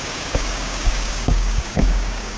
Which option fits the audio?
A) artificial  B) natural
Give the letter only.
A